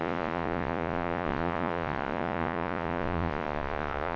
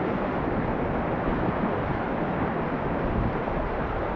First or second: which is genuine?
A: second